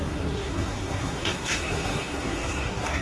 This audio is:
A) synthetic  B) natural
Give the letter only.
A